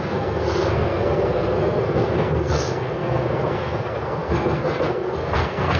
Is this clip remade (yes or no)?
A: yes